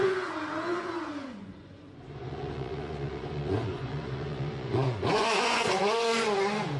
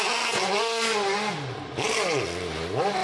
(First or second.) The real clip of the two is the second